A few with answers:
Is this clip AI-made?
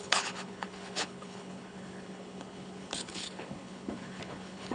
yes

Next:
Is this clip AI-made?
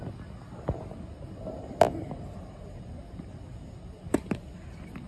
no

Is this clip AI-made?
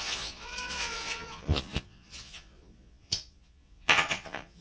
yes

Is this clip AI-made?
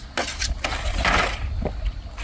no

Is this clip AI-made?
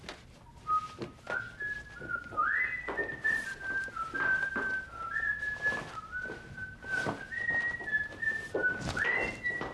no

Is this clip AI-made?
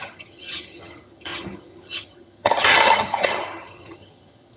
yes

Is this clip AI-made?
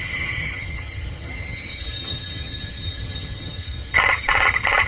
yes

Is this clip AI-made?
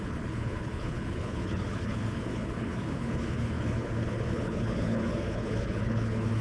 yes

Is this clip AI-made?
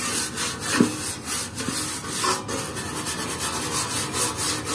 no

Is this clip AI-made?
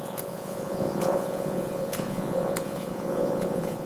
yes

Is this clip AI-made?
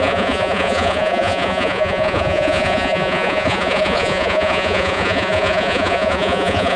yes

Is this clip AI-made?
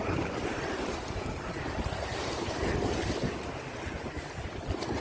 no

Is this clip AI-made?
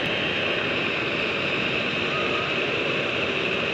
yes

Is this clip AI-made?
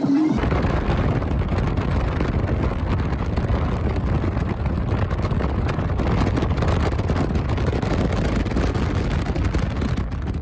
no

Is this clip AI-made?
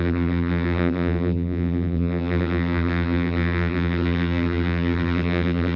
yes